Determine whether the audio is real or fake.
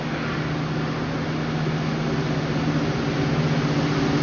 real